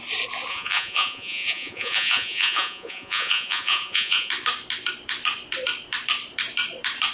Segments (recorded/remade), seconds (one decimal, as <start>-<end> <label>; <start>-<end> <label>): 0.0-0.5 recorded; 0.5-4.3 remade; 4.3-7.1 recorded